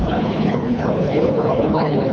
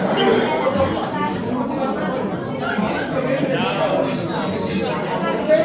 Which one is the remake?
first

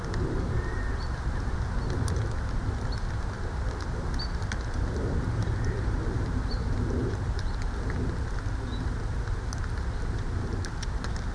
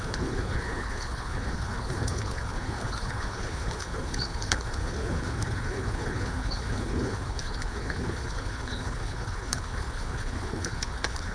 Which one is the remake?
second